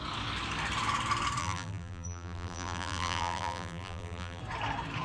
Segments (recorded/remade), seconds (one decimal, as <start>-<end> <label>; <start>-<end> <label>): 0.0-1.4 recorded; 1.4-4.4 remade; 4.4-5.0 recorded